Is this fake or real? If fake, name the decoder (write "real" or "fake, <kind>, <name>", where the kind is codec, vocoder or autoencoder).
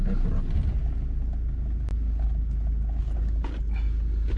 real